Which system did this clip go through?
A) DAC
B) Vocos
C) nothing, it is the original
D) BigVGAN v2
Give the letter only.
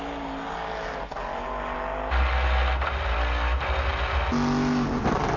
C